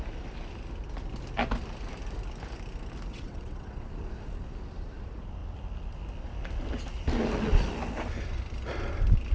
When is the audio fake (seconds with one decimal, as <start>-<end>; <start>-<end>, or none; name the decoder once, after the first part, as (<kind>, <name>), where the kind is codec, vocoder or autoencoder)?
3.1-3.9 (vocoder, WaveNeXt)